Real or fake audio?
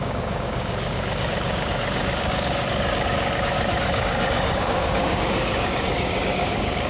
fake